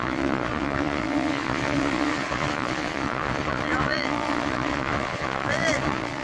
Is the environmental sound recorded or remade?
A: remade